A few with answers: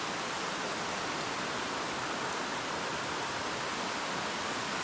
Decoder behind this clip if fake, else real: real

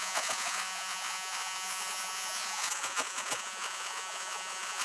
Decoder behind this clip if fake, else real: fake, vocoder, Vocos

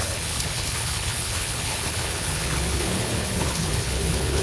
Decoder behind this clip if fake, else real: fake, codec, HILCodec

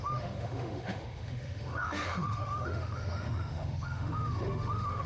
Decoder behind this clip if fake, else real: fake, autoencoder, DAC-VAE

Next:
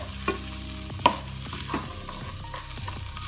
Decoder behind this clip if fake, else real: real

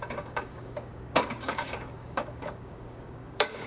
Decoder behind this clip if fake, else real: fake, codec, DAC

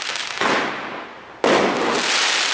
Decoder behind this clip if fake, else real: real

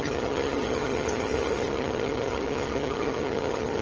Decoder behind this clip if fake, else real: fake, vocoder, HiFi-GAN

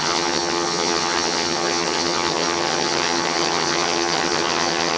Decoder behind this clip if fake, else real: fake, vocoder, HiFi-GAN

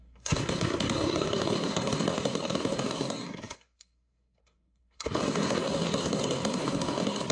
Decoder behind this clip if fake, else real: fake, codec, SNAC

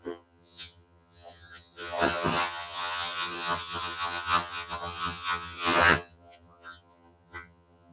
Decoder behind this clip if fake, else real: fake, vocoder, HiFi-GAN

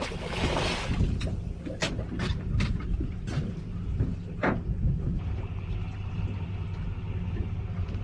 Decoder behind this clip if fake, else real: real